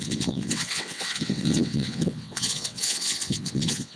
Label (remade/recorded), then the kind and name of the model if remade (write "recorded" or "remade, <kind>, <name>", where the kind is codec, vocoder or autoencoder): remade, vocoder, WaveNeXt